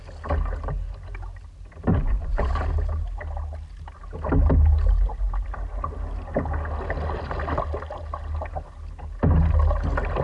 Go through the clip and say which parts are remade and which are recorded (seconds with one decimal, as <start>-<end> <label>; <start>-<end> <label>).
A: 0.0-1.9 recorded; 1.9-2.5 remade; 2.5-10.2 recorded